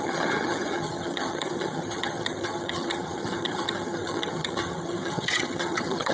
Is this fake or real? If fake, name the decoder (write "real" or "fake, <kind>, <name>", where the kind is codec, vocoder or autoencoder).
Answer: fake, vocoder, HiFi-GAN